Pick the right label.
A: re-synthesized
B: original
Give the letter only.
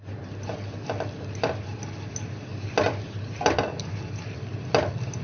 B